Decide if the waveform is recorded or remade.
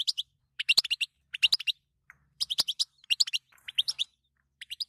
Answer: remade